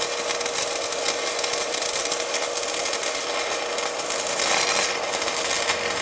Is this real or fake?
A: real